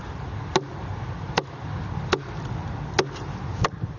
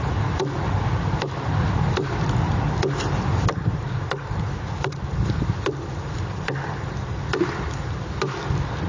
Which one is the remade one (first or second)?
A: second